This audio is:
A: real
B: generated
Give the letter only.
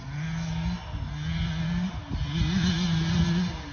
A